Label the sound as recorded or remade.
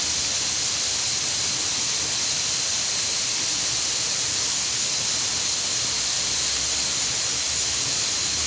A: recorded